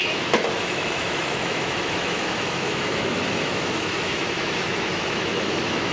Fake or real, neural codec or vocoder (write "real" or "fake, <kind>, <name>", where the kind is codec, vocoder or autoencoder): fake, autoencoder, DAC-VAE